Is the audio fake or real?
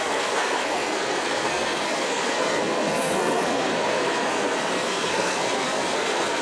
fake